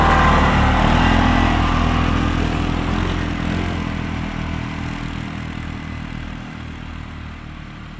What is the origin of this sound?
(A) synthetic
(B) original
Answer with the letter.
B